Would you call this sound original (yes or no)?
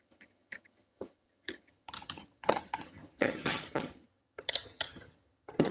no